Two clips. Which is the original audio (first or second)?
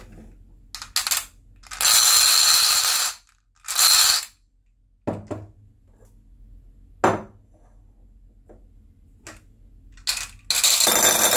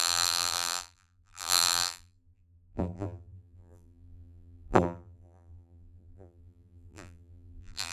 first